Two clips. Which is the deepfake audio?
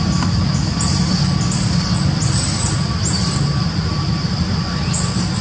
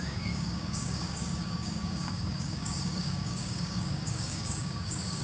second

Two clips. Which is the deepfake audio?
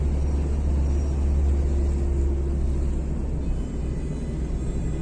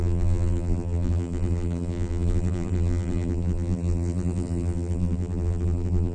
second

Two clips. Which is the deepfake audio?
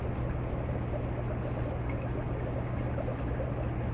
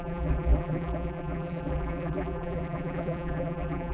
second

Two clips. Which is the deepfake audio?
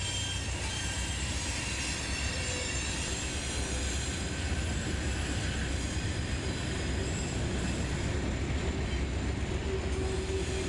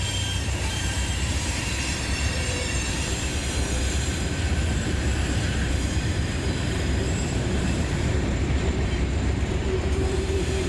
second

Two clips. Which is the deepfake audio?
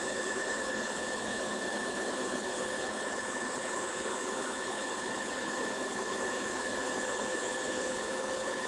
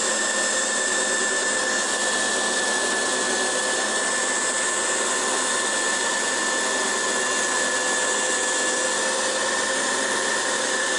first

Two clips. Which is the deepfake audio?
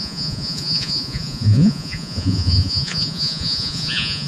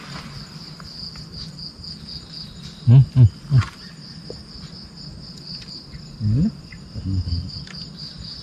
first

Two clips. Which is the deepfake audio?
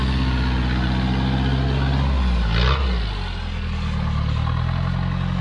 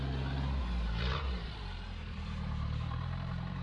second